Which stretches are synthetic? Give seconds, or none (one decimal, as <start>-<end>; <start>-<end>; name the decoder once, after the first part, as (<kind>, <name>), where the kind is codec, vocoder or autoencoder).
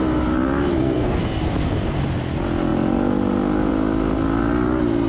0.7-1.2 (codec, SNAC)